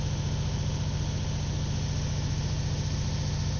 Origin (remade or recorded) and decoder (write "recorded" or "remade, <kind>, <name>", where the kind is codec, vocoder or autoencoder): recorded